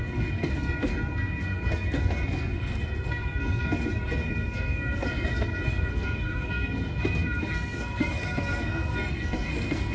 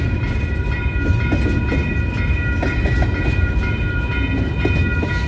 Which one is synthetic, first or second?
first